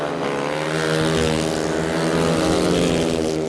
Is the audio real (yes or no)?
yes